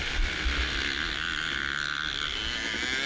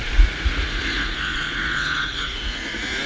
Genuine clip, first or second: first